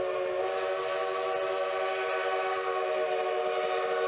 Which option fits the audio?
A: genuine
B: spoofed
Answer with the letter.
A